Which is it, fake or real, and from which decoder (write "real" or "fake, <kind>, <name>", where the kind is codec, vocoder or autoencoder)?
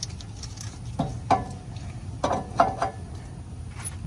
real